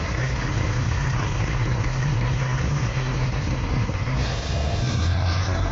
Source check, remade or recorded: remade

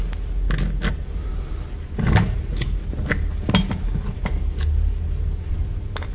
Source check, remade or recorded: recorded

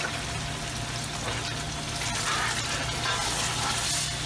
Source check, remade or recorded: recorded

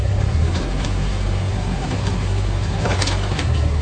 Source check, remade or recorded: remade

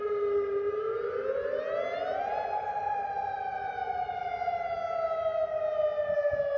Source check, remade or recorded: recorded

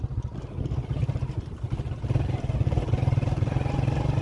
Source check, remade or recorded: recorded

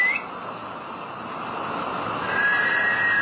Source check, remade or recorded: recorded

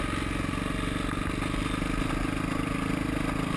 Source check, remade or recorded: recorded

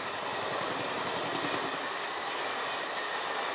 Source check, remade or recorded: recorded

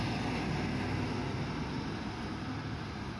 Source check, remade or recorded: recorded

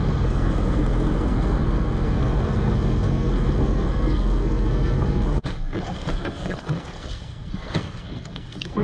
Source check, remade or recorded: remade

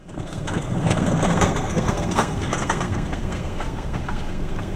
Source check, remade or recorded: remade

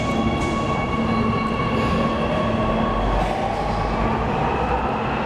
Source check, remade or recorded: recorded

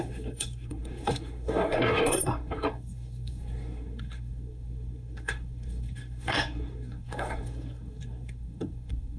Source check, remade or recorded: remade